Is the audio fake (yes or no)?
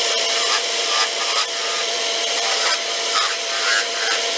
yes